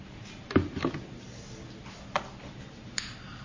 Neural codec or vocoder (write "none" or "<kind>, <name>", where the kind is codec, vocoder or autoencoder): none